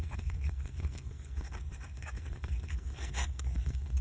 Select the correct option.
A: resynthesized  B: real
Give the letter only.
A